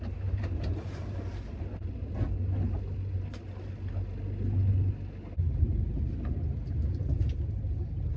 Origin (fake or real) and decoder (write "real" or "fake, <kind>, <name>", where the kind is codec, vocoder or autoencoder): real